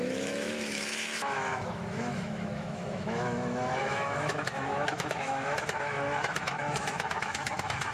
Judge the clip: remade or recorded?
remade